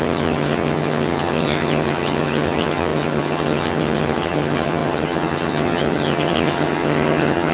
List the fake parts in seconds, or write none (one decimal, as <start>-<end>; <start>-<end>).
0.0-7.5